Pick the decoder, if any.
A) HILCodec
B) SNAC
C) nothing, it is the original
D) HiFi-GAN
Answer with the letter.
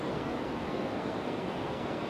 B